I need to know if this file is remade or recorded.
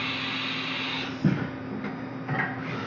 recorded